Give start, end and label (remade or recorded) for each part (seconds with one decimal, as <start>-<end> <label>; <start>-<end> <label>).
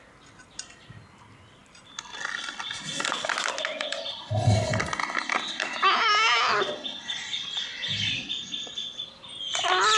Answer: 0.0-1.6 recorded; 1.6-3.9 remade; 3.9-10.0 recorded